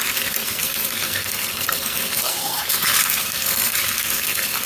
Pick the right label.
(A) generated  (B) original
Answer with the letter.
A